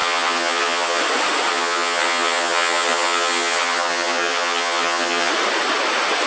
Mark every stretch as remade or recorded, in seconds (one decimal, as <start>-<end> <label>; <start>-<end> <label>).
0.0-1.0 remade; 1.0-1.5 recorded; 1.5-5.3 remade; 5.3-6.3 recorded